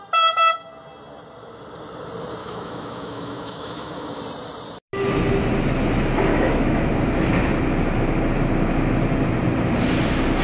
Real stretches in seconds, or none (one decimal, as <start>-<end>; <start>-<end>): 0.0-2.4; 4.2-6.3; 6.9-10.4

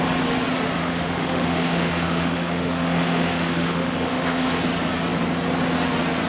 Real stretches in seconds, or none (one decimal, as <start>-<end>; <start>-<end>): 0.0-0.8; 4.6-6.3

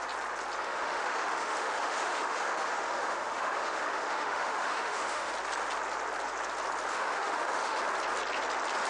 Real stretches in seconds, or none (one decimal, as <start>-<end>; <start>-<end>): 0.0-0.6; 5.3-6.9; 7.8-8.9

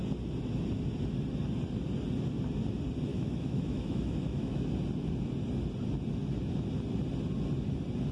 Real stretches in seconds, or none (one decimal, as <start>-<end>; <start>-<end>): 0.0-3.1; 4.7-8.1

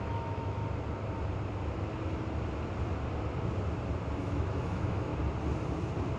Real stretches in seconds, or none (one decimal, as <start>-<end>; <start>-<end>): 0.6-4.2; 5.1-6.2

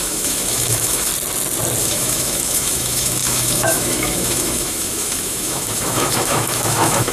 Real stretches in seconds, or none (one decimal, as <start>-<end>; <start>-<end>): 1.1-1.8

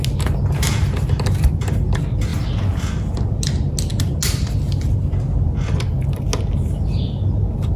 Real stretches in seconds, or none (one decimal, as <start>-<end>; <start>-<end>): 0.0-7.8

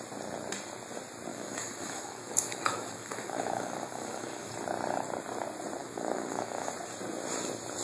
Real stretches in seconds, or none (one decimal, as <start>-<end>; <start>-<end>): 0.0-1.3; 4.5-5.8; 6.7-7.8